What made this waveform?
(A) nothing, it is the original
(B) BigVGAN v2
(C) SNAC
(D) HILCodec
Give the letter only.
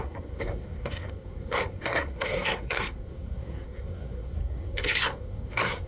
C